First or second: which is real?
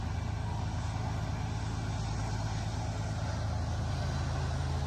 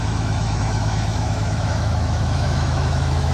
first